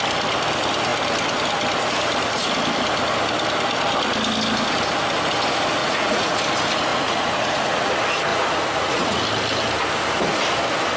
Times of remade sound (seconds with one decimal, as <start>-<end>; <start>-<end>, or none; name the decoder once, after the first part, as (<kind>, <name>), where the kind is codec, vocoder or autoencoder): 5.8-6.4 (vocoder, Vocos); 6.9-7.9; 8.3-9.2

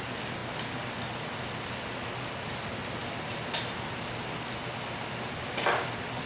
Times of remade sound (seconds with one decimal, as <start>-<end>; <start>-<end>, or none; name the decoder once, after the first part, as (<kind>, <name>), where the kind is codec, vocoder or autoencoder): none

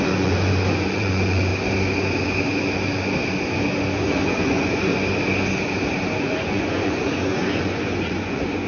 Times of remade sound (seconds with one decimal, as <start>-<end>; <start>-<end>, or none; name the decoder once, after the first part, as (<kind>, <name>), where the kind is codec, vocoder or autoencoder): 0.0-1.5 (vocoder, Vocos); 4.0-4.9; 6.2-8.7

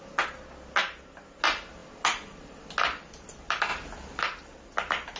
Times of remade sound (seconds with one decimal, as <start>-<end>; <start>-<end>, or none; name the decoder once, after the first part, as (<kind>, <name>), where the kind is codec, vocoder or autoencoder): none

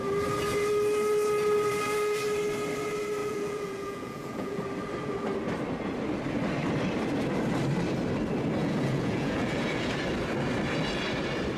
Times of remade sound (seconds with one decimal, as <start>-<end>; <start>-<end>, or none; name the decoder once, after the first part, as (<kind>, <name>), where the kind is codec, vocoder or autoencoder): 3.2-4.6 (vocoder, Vocos); 8.6-9.9

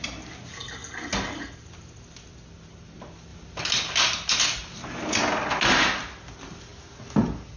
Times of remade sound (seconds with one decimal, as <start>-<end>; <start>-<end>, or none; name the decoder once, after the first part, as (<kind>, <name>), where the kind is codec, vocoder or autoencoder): none

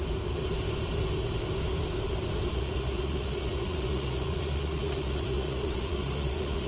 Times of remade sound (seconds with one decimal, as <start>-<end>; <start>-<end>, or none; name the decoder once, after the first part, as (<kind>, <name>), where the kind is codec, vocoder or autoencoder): 2.5-6.7 (vocoder, Vocos)